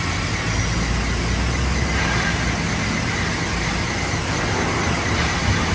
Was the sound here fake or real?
real